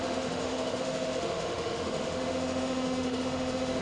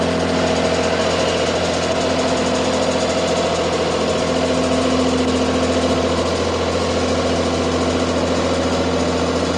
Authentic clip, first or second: second